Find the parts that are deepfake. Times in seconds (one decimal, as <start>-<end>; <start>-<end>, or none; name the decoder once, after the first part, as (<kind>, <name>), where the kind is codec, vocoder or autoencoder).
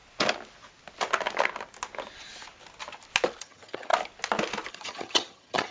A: 3.4-3.9 (vocoder, HiFi-GAN); 4.7-5.7